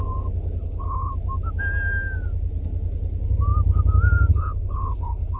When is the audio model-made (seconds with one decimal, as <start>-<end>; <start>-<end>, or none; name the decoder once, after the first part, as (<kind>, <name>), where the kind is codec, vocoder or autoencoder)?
0.6-1.1 (codec, HILCodec); 4.3-5.4